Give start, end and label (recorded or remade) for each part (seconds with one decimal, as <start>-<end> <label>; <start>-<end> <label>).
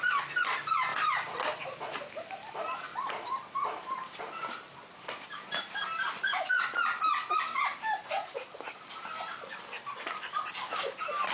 0.0-2.9 recorded; 2.9-4.2 remade; 4.2-7.7 recorded; 7.7-8.5 remade; 8.5-11.3 recorded